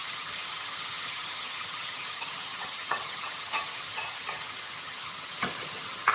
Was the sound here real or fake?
fake